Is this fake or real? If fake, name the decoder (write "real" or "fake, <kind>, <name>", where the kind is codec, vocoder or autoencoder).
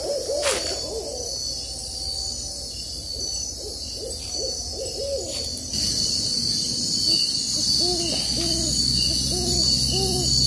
real